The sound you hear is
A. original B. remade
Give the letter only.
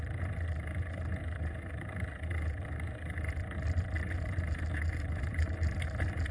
A